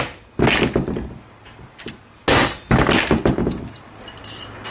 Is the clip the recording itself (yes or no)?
yes